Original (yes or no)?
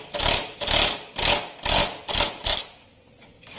yes